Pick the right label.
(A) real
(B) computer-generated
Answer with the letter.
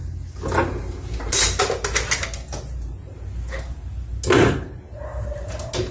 A